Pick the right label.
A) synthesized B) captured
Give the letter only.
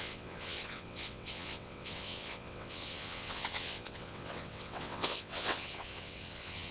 A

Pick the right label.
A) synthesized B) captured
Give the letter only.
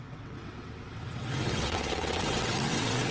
A